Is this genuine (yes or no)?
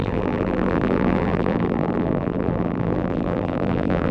no